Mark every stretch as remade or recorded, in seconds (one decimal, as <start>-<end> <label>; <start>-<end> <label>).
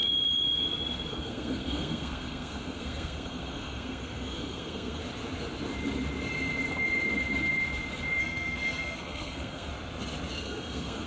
0.0-1.1 recorded; 1.1-5.0 remade; 5.0-8.2 recorded; 8.2-9.7 remade; 9.7-10.4 recorded; 10.4-11.1 remade